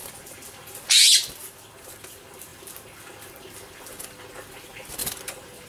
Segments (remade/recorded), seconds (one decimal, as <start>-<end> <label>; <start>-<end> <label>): 0.0-5.0 recorded; 5.0-5.7 remade